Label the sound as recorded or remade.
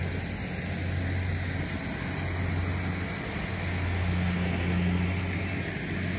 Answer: recorded